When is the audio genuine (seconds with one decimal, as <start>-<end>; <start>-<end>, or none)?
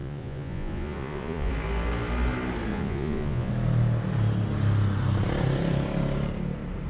1.5-2.7; 3.5-6.9